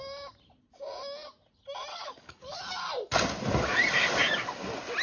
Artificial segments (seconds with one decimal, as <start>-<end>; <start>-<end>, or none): 1.9-2.9